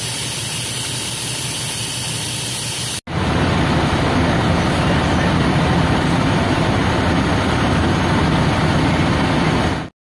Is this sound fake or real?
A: real